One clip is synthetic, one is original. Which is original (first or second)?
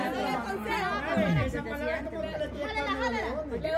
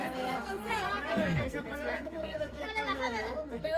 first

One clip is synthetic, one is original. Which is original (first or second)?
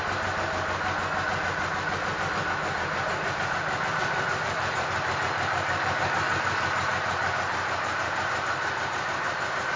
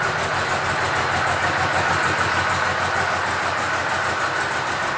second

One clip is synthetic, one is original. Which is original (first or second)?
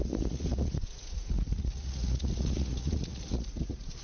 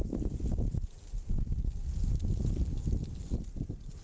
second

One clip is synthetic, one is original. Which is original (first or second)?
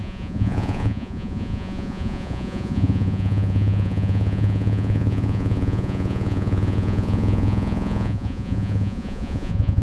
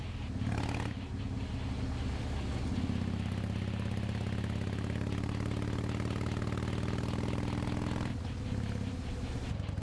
second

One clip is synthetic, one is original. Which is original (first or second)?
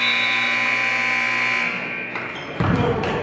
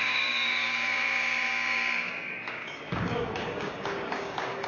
first